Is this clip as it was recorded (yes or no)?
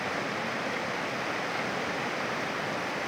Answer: yes